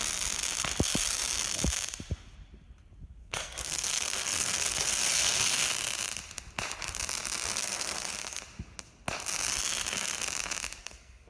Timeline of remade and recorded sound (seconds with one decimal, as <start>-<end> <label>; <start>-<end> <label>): 0.0-3.2 recorded; 3.2-5.7 remade; 5.7-7.6 recorded; 7.6-8.4 remade; 8.4-10.8 recorded; 10.8-11.3 remade